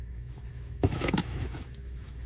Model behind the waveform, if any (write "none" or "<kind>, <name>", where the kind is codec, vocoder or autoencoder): autoencoder, DAC-VAE